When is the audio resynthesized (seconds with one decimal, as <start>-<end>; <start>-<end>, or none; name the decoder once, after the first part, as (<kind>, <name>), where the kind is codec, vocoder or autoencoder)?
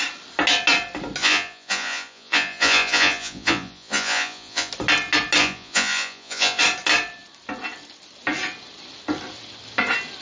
1.2-4.7 (vocoder, Vocos); 5.4-6.6